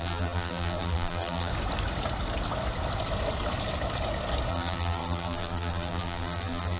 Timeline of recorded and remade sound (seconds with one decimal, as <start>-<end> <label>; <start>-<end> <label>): 0.0-1.5 remade; 1.5-4.5 recorded; 4.5-6.8 remade